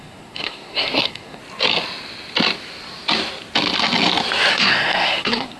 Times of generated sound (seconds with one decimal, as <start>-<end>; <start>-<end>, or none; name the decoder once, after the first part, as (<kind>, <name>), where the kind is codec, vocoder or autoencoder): 0.0-1.4 (codec, SNAC); 4.5-5.6